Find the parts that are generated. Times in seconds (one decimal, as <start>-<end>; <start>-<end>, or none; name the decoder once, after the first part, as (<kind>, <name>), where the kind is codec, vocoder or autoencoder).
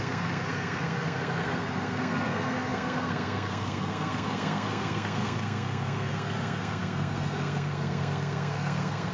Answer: 0.0-9.1 (codec, SNAC)